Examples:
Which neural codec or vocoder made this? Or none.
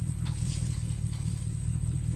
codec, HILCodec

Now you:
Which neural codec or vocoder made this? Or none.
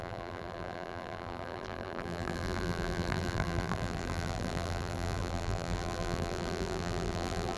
vocoder, BigVGAN v2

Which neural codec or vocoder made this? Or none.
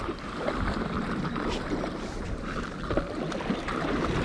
none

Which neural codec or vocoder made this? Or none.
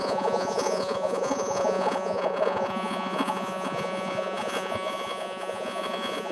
vocoder, Vocos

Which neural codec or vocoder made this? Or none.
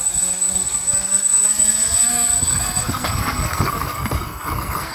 codec, SNAC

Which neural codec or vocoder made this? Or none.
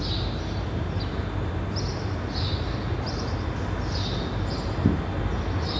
none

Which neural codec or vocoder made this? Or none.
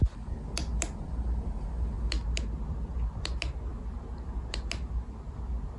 none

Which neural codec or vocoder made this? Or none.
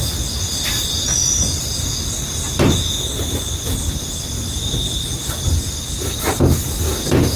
none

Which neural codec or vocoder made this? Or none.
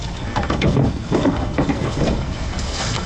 codec, SNAC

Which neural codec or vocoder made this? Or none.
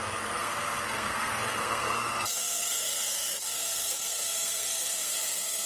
codec, SNAC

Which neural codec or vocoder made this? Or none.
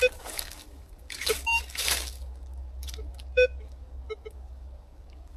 codec, DAC